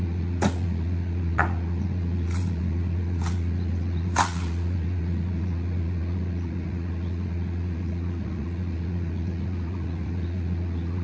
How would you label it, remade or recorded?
remade